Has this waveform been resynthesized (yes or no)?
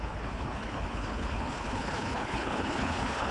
yes